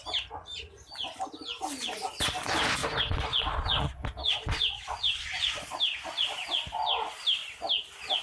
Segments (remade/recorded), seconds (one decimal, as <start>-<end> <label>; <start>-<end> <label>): 0.0-2.8 recorded; 2.8-5.8 remade; 5.8-8.2 recorded